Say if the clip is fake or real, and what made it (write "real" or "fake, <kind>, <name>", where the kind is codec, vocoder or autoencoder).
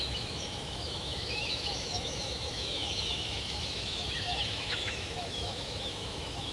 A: fake, autoencoder, DAC-VAE